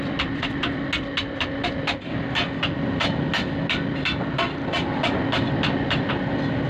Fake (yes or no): no